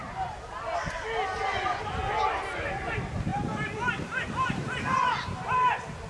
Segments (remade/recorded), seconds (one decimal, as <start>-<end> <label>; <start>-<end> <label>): 0.0-6.1 recorded